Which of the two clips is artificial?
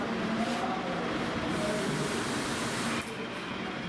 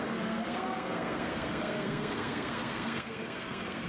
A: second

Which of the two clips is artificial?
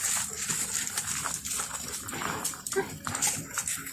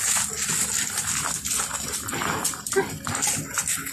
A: first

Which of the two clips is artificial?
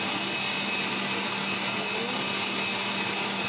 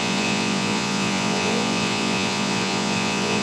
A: second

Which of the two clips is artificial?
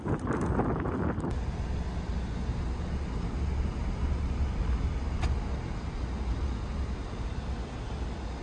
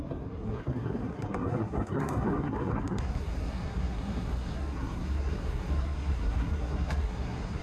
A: second